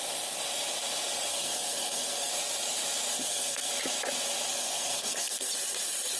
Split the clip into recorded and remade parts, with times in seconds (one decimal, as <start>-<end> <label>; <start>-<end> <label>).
0.0-1.3 recorded; 1.3-2.3 remade; 2.3-3.1 recorded; 3.1-3.7 remade; 3.7-4.5 recorded; 4.5-5.5 remade; 5.5-6.2 recorded